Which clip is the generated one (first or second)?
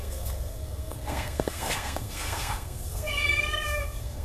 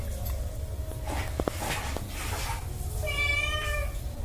first